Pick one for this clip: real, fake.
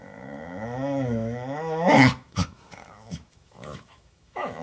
fake